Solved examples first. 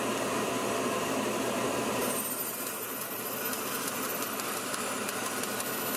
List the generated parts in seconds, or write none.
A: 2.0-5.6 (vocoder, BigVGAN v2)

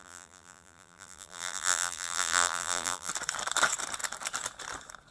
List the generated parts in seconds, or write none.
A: 0.0-3.1 (vocoder, BigVGAN v2)

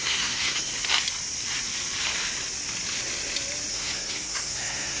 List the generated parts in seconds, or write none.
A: 0.0-0.7 (codec, SNAC); 3.7-5.0

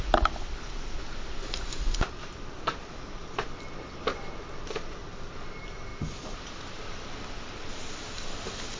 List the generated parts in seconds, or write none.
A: none

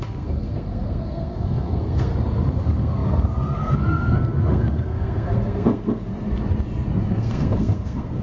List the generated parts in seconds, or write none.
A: 0.0-2.1 (codec, SNAC); 2.6-6.1; 7.1-8.2

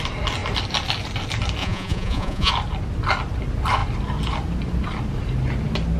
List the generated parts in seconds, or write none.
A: 1.6-2.5 (vocoder, Vocos)

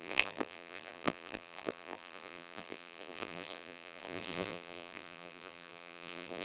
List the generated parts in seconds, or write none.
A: 0.0-6.4 (vocoder, BigVGAN v2)